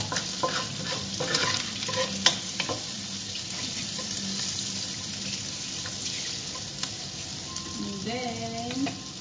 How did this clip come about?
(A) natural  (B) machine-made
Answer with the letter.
A